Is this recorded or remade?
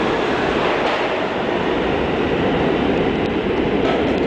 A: remade